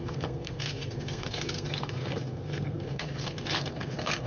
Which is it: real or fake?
fake